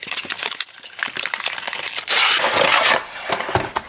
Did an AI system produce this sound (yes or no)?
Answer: no